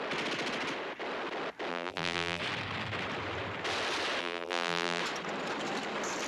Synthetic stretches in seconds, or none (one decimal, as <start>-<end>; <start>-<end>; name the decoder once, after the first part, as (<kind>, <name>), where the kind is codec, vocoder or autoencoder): 1.7-2.4 (vocoder, BigVGAN v2); 4.2-5.0